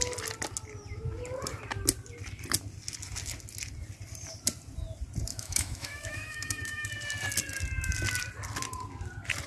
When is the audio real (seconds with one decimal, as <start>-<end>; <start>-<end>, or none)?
0.0-5.3; 6.9-9.5